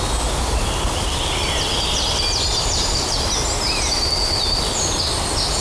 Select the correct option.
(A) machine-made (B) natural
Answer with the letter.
B